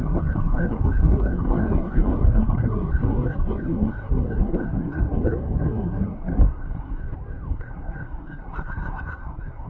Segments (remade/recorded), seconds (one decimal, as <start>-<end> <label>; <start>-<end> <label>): 0.0-7.0 remade; 7.0-7.5 recorded; 7.5-9.7 remade